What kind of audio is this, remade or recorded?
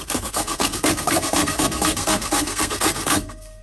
remade